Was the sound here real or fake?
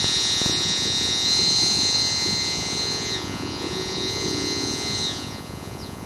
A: fake